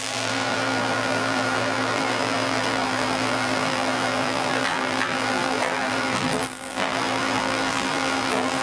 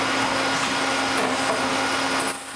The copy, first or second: first